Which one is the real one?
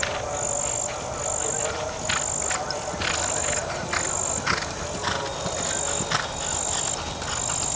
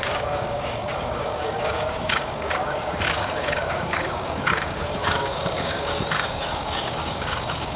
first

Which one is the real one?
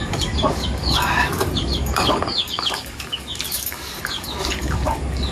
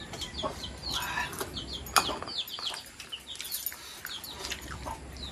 second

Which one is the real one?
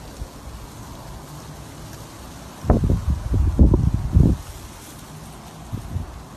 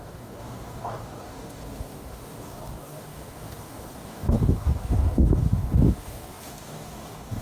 first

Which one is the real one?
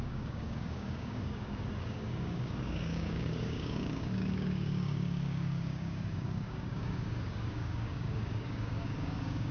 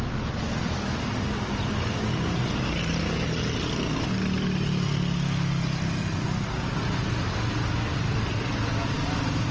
second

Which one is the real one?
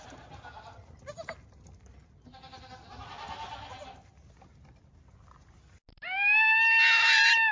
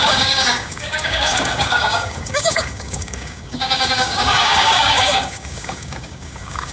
first